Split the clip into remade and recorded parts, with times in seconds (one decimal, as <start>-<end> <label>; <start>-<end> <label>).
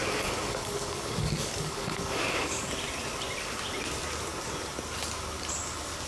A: 0.0-2.7 remade; 2.7-6.1 recorded